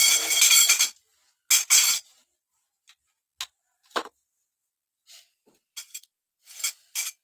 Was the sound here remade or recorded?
recorded